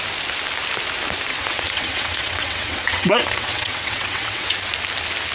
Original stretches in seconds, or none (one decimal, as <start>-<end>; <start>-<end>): 0.0-1.3; 4.5-5.3